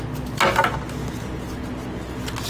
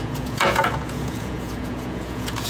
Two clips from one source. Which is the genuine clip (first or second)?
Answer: first